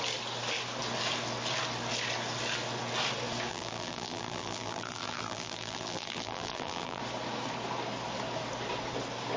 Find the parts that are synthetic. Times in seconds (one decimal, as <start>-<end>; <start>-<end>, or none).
3.5-7.0